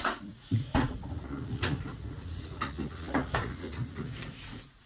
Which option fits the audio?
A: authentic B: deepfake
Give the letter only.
B